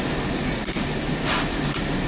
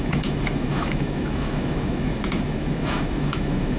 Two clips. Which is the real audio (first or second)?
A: first